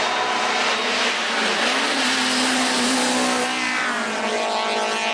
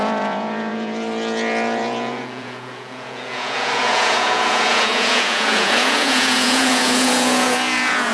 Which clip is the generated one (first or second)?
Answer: second